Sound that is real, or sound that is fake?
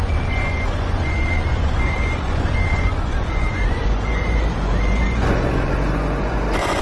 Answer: fake